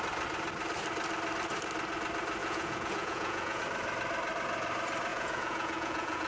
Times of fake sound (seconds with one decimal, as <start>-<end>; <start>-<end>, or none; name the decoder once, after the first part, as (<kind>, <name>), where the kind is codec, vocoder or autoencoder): 2.4-3.6 (vocoder, Vocos); 5.1-6.3